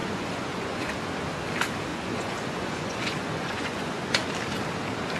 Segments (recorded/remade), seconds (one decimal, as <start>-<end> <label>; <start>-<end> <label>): 0.0-0.9 remade; 0.9-1.9 recorded; 1.9-4.3 remade; 4.3-5.2 recorded